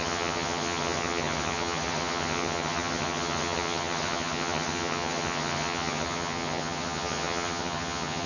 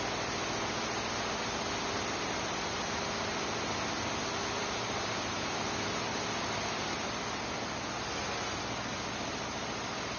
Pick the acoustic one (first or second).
second